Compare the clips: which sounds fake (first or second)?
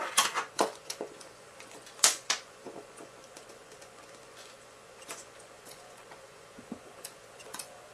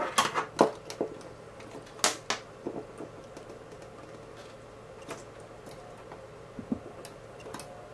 first